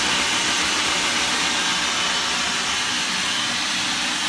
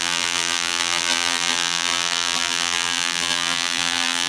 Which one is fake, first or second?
second